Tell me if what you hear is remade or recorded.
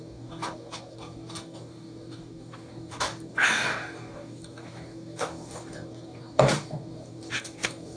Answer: remade